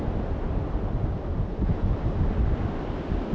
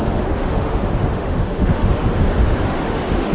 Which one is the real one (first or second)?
first